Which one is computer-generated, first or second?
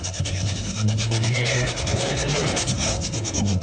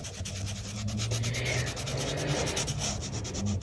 first